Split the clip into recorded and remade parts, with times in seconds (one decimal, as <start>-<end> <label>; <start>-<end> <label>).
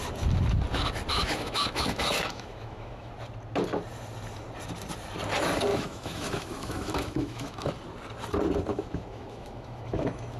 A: 0.0-1.1 recorded; 1.1-3.1 remade; 3.1-5.7 recorded; 5.7-7.7 remade; 7.7-8.7 recorded; 8.7-10.4 remade